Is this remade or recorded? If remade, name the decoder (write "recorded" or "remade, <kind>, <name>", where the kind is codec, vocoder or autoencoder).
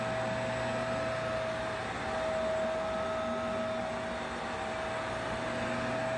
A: recorded